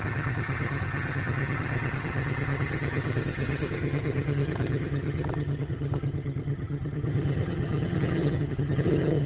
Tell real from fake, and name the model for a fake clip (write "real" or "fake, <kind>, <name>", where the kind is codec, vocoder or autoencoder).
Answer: fake, vocoder, HiFi-GAN